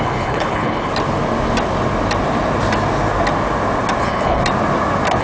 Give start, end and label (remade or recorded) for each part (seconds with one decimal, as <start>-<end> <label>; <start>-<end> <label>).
0.0-0.9 remade; 0.9-4.0 recorded; 4.0-4.4 remade; 4.4-5.2 recorded